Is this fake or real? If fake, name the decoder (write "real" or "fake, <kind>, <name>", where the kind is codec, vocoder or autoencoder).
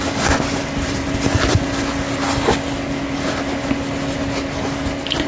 real